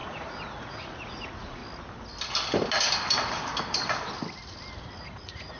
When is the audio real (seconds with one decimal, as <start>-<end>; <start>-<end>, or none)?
1.6-5.0